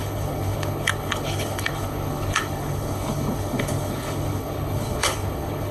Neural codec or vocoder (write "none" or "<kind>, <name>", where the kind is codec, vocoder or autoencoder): codec, HILCodec